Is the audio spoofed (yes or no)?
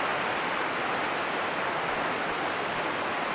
no